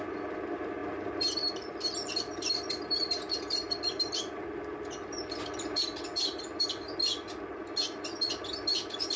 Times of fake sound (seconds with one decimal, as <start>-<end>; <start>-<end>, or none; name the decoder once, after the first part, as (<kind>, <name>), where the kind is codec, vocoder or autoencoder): none